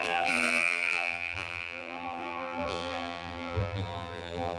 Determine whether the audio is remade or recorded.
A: remade